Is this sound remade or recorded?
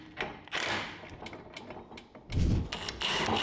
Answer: remade